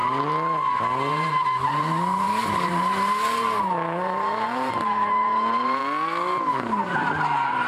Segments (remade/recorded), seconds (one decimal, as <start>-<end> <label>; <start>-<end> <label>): 0.0-1.1 recorded; 1.1-5.8 remade; 5.8-6.4 recorded; 6.4-7.7 remade